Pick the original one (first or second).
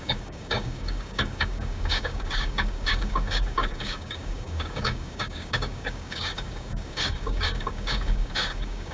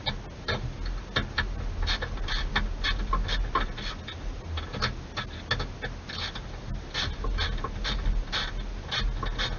second